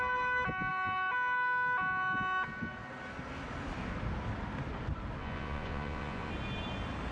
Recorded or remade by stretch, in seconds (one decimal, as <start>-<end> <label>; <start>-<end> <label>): 0.0-5.2 recorded; 5.2-6.3 remade; 6.3-7.1 recorded